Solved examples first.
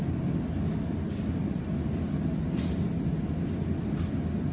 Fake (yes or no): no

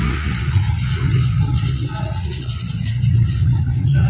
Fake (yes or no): yes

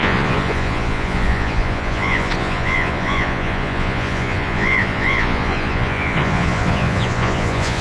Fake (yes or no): yes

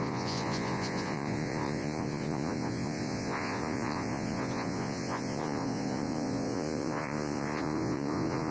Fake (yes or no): yes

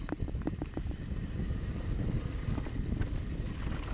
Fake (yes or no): no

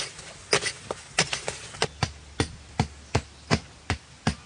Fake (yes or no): no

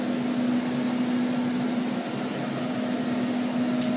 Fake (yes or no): no